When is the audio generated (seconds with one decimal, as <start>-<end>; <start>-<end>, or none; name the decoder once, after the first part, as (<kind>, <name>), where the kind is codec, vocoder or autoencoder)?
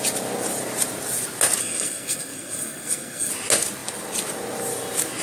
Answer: 1.6-3.3 (codec, SNAC)